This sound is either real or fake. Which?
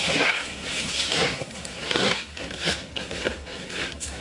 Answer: fake